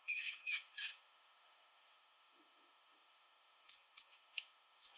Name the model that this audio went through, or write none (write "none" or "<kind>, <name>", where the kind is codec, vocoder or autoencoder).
autoencoder, DAC-VAE